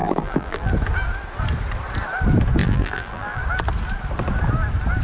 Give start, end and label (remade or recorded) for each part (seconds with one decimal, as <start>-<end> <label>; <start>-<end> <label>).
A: 0.0-0.7 remade; 0.7-2.6 recorded; 2.6-3.4 remade; 3.4-5.0 recorded